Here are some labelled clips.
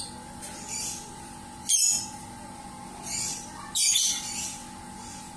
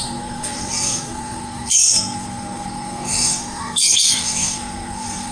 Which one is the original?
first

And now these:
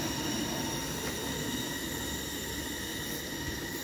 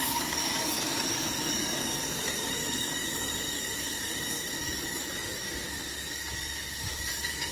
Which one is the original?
first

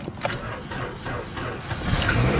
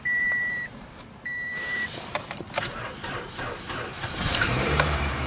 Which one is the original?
first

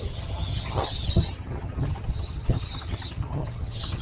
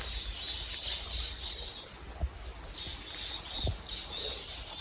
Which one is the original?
second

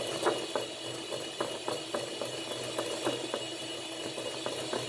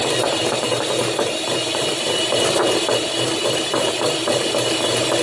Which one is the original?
first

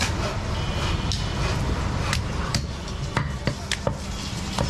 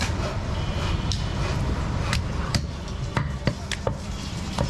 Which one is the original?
first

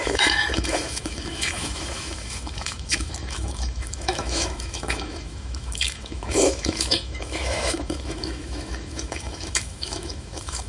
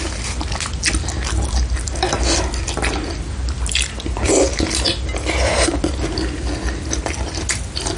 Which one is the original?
second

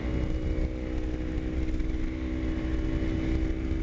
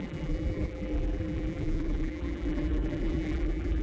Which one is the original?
first